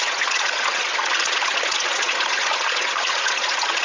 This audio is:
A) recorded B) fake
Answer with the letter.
B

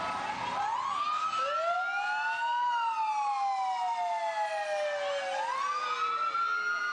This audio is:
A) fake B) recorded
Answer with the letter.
B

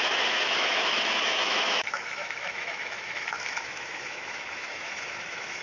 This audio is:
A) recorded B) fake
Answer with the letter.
B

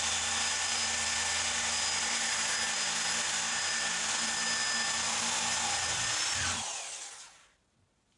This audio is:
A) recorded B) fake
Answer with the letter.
A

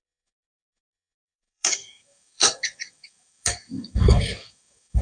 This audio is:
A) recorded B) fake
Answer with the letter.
B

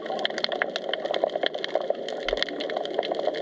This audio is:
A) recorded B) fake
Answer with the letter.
A